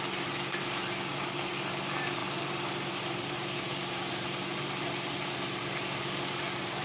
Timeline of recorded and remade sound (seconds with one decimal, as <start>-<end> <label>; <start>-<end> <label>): 0.0-6.8 recorded